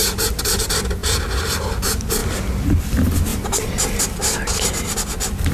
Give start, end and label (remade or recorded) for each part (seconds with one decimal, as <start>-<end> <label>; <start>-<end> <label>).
0.0-1.0 recorded; 1.0-1.6 remade; 1.6-3.3 recorded; 3.3-4.0 remade; 4.0-5.5 recorded